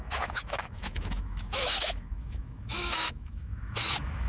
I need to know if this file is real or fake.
fake